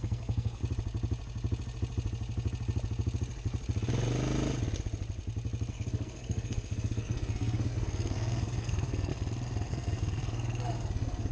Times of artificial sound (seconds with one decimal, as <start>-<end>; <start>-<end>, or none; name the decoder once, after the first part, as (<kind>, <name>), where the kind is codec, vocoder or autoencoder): 0.0-0.6 (codec, SNAC); 5.7-9.1; 9.7-11.3